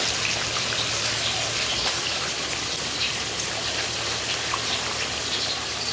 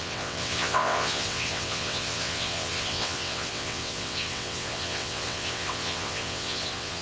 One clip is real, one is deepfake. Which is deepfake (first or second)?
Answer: second